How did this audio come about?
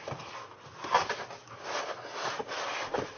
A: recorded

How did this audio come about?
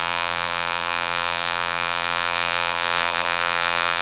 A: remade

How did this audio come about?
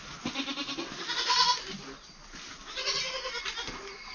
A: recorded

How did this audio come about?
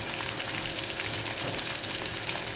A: remade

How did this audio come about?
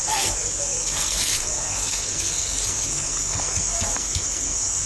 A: remade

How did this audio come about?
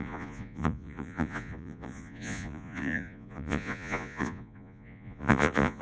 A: remade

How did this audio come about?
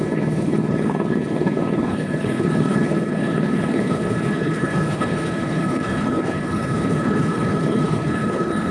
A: remade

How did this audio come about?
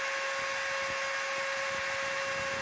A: recorded